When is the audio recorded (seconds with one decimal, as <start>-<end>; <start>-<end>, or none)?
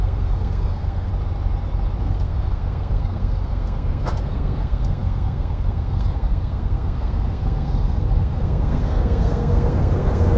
1.1-2.0